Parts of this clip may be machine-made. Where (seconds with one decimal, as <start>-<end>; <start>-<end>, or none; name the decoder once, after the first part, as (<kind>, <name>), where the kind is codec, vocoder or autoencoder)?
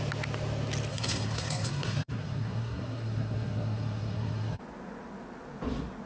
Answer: 0.9-4.6 (codec, SNAC)